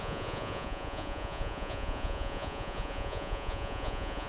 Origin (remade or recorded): remade